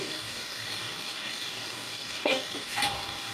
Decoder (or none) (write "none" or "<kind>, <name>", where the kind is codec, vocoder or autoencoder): codec, DAC